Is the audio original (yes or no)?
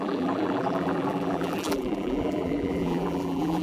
no